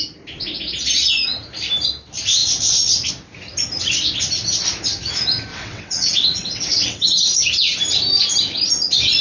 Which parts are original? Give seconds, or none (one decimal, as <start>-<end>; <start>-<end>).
0.0-5.5; 7.0-9.2